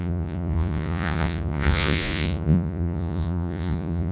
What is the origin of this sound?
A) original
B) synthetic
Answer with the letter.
B